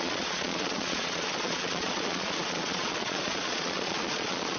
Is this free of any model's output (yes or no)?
no